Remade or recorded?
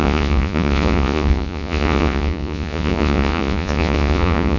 remade